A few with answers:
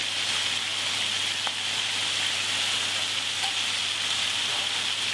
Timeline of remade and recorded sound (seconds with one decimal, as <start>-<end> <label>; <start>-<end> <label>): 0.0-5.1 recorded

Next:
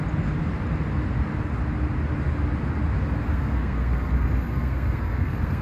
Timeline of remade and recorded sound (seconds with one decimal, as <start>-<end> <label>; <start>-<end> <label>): 0.0-3.3 recorded; 3.3-5.6 remade

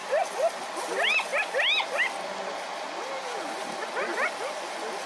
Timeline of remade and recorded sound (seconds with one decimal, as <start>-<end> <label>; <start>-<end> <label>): 0.0-5.1 recorded

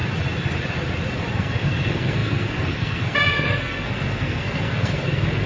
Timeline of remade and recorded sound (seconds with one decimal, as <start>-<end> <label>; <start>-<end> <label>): 0.0-1.3 recorded; 1.3-5.5 remade

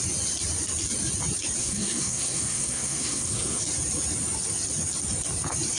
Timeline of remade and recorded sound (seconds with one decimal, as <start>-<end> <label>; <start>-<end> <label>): 0.0-1.6 recorded; 1.6-3.6 remade; 3.6-5.8 recorded